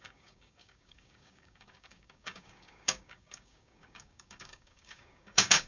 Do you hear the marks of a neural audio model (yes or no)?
yes